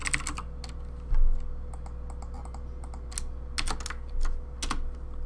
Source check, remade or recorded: recorded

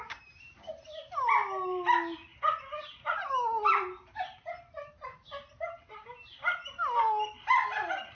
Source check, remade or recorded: recorded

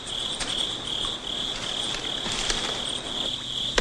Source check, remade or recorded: recorded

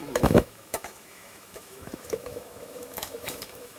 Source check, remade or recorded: remade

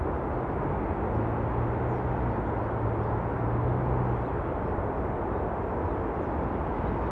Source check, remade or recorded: recorded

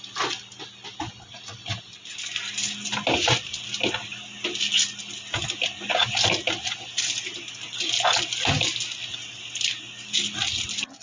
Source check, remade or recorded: recorded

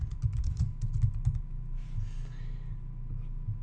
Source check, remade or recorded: recorded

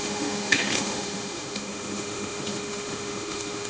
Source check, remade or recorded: remade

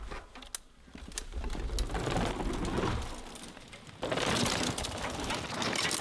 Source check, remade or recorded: recorded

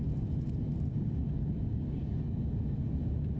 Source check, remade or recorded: recorded